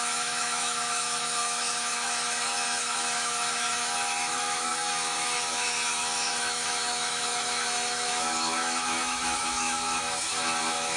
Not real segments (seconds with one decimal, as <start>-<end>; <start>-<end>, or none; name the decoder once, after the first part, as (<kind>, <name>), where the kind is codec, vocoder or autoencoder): 0.0-11.0 (autoencoder, DAC-VAE)